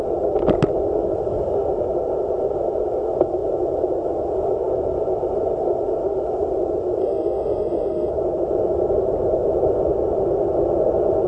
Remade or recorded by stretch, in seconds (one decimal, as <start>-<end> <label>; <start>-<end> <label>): 0.0-7.0 recorded; 7.0-8.1 remade; 8.1-11.3 recorded